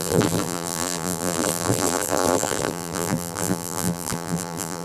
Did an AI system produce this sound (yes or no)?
yes